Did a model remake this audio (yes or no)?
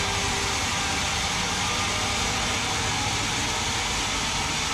no